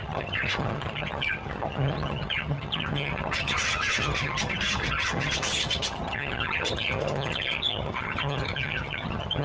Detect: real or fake fake